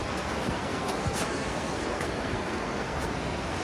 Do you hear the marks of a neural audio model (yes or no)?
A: yes